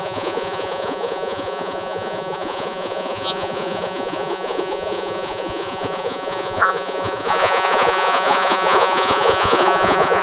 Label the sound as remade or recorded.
remade